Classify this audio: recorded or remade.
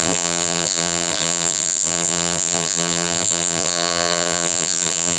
remade